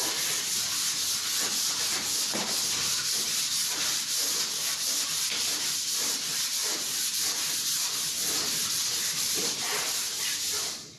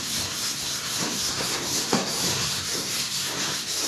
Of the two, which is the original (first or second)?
first